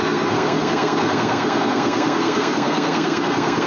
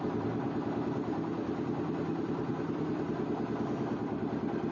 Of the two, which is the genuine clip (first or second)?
second